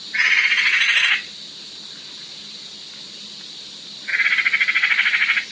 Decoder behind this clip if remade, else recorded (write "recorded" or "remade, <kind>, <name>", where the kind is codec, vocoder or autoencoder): recorded